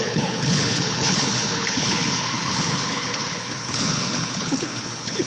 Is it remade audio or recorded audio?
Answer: remade